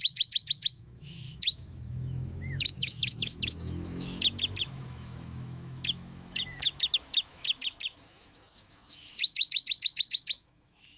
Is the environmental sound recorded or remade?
remade